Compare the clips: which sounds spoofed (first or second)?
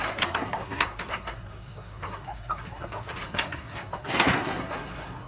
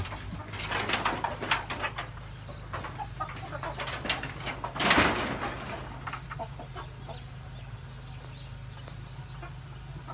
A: first